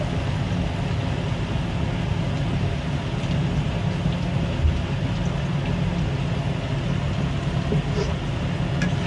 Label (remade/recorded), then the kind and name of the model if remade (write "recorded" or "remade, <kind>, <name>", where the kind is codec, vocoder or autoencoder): recorded